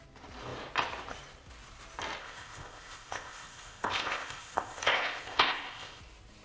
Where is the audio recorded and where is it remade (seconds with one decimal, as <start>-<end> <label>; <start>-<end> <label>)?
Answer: 0.0-2.2 recorded; 2.2-6.0 remade; 6.0-6.4 recorded